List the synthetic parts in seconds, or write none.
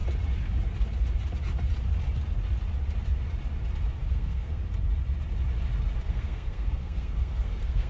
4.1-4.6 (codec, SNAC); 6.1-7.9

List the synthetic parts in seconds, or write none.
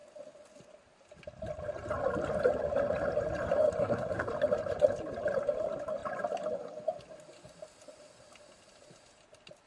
3.8-4.3 (codec, SNAC)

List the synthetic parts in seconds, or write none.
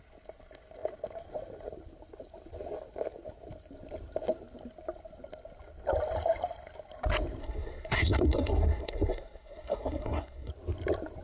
7.4-10.5 (codec, SNAC)